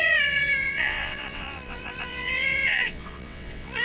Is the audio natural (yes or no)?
no